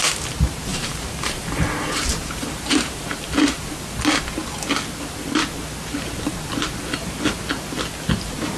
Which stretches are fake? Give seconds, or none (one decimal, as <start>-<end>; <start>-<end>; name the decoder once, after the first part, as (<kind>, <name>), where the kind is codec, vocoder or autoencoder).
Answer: 0.7-3.7 (vocoder, BigVGAN v2)